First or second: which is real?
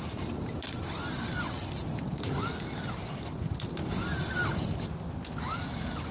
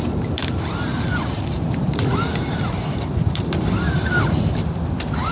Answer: first